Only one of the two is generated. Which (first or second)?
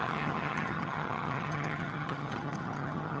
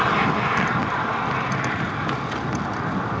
first